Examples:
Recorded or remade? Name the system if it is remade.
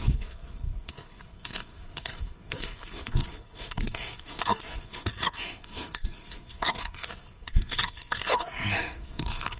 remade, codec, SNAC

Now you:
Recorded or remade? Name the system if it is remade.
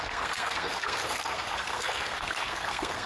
remade, codec, SNAC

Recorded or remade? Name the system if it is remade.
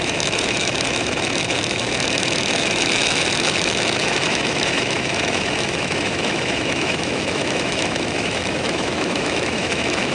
remade, autoencoder, DAC-VAE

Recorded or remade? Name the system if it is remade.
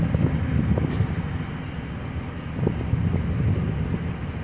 recorded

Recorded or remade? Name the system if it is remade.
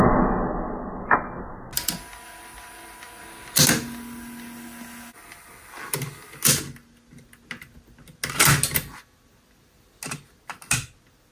recorded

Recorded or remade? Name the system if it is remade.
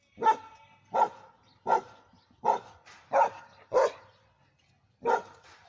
recorded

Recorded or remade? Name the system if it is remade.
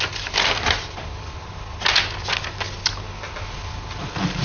recorded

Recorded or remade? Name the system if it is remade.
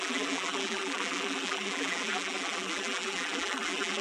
remade, vocoder, BigVGAN v2